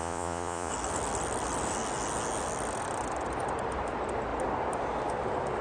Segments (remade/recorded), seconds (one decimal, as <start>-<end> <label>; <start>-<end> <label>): 0.0-0.7 remade; 0.7-5.6 recorded